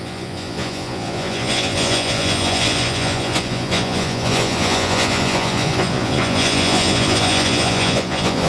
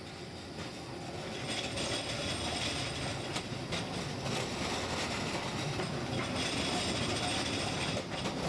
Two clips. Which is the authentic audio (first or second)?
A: second